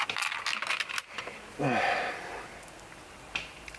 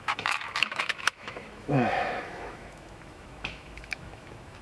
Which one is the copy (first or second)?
second